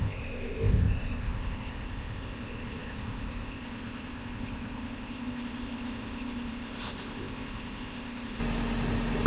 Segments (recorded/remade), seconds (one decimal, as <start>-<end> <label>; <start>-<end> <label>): 0.0-8.4 remade; 8.4-9.3 recorded